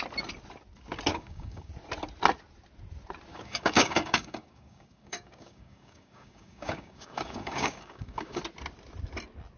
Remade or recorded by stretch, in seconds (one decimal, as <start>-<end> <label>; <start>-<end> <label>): 0.0-1.1 recorded; 1.1-1.7 remade; 1.7-3.3 recorded; 3.3-8.4 remade; 8.4-9.6 recorded